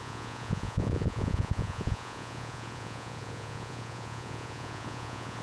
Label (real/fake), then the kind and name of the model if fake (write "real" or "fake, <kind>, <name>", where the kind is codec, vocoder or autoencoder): fake, vocoder, Vocos